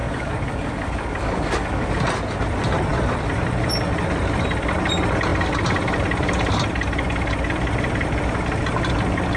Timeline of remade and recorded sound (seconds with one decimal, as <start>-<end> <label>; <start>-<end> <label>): 0.0-1.9 remade; 1.9-9.4 recorded